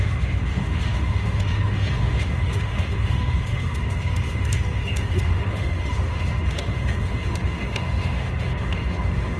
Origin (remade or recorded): remade